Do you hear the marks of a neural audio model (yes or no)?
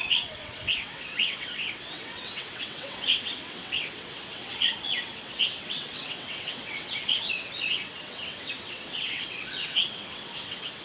yes